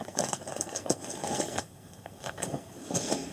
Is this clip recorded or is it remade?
remade